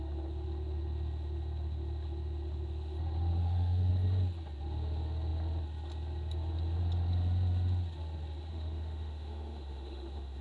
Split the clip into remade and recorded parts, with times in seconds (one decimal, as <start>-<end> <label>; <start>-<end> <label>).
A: 0.0-3.4 recorded; 3.4-3.9 remade; 3.9-8.5 recorded; 8.5-10.4 remade